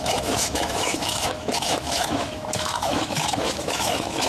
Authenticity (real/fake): fake